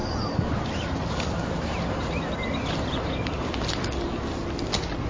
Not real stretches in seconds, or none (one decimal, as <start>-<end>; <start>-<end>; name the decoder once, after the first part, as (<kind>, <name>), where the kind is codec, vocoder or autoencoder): none